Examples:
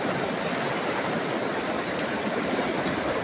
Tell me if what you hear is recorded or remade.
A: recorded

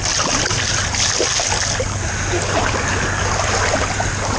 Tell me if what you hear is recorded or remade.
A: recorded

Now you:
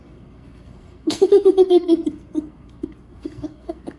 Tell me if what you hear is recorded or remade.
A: remade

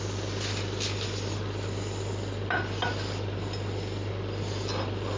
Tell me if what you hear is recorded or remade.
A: recorded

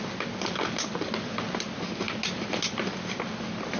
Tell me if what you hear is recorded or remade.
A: recorded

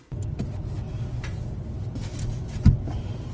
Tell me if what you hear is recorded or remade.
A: recorded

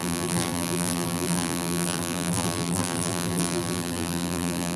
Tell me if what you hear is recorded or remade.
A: remade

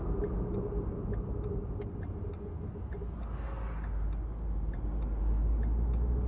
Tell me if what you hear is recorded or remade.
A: recorded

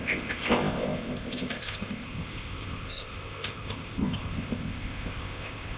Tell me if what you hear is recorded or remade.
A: remade